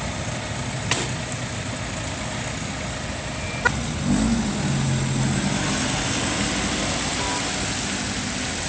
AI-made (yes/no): no